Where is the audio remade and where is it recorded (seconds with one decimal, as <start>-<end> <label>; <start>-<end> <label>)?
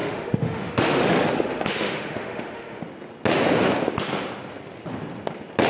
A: 0.0-2.8 remade; 2.8-5.7 recorded